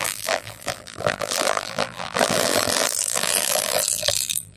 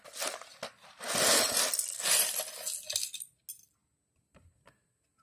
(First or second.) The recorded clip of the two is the second